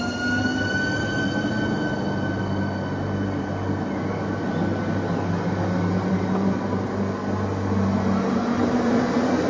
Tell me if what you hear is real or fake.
real